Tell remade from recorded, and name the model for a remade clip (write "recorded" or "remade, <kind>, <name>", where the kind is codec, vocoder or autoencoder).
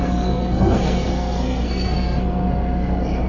remade, codec, SNAC